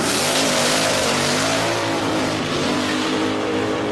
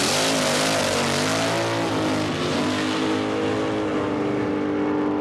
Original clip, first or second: second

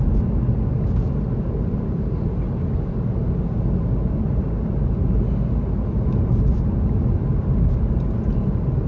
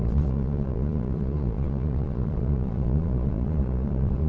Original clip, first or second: first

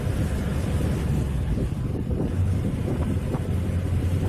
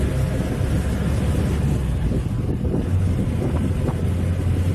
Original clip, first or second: second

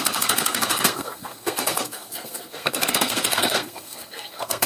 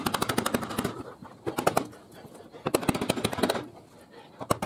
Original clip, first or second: second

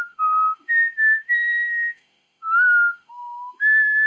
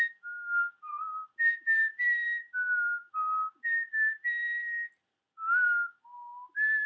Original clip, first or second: second